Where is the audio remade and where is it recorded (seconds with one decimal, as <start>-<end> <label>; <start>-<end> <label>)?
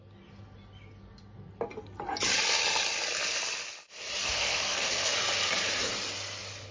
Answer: 0.0-4.2 recorded; 4.2-5.1 remade; 5.1-6.7 recorded